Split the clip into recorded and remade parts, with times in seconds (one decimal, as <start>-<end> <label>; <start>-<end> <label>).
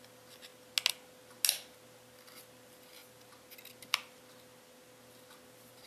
0.0-5.9 recorded